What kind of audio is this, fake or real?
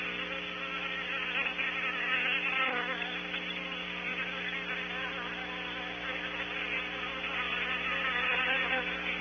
real